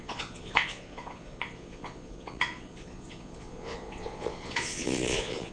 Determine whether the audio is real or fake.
fake